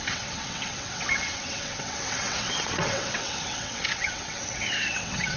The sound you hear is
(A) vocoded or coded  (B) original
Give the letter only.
A